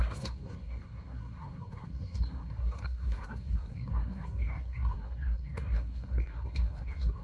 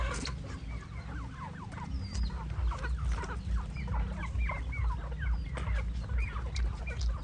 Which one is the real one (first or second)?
second